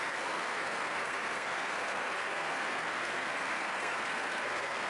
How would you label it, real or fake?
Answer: fake